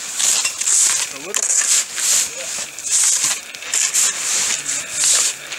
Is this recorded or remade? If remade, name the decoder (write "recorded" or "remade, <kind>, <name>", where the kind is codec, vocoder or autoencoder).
recorded